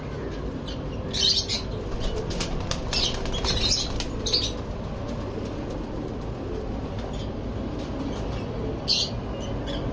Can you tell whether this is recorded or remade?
recorded